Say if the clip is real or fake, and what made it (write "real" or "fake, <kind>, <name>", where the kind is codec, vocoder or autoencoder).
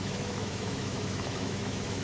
fake, autoencoder, DAC-VAE